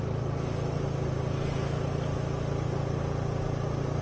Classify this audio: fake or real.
fake